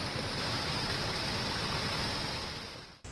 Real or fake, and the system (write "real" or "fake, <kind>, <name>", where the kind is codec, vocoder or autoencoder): real